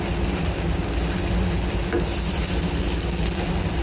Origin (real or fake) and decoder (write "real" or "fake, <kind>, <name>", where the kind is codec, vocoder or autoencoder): real